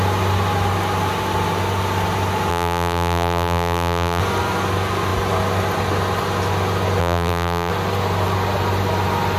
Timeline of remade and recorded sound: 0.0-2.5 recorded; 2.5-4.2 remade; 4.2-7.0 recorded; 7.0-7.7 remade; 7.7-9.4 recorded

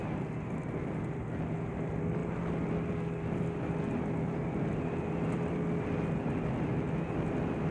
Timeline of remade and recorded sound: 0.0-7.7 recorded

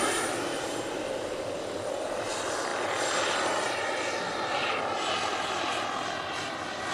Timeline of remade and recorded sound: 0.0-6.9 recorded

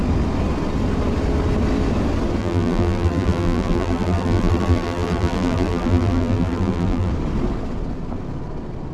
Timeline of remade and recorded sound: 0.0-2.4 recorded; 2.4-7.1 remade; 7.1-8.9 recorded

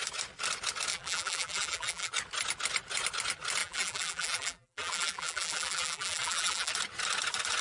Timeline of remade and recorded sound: 0.0-0.9 recorded; 0.9-2.1 remade; 2.1-3.6 recorded; 3.6-6.7 remade; 6.7-7.6 recorded